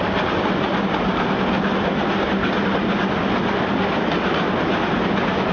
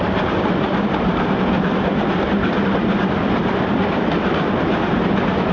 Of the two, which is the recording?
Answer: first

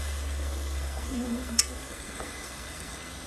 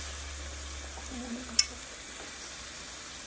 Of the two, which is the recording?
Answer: second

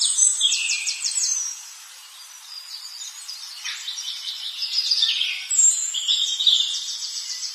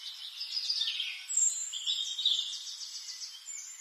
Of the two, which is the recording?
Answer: second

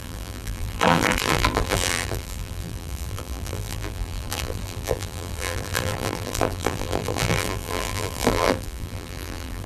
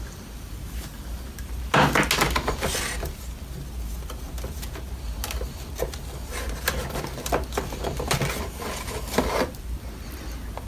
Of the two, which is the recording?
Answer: second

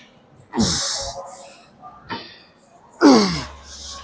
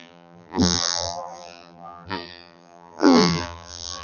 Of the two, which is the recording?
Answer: first